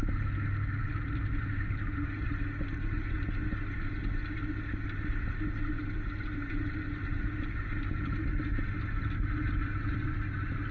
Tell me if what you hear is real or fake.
real